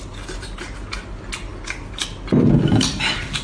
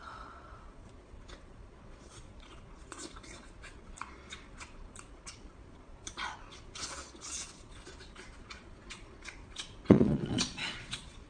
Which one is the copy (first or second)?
second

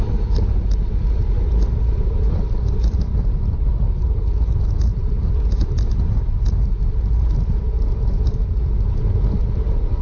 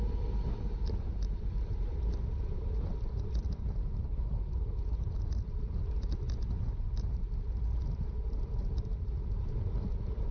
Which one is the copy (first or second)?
second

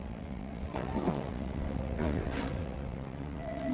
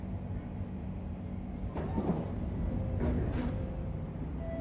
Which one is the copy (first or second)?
first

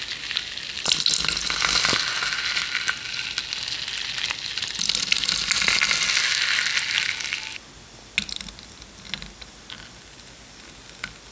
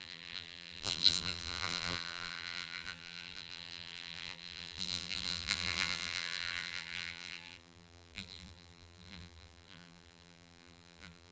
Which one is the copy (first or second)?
second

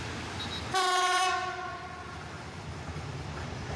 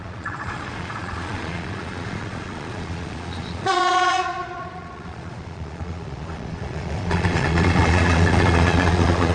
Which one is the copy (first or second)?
second